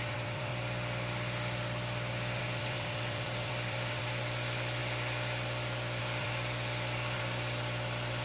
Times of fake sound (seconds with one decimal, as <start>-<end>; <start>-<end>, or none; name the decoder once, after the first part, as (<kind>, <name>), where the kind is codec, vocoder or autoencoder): 0.0-0.5 (vocoder, BigVGAN v2); 2.4-4.8; 6.0-8.2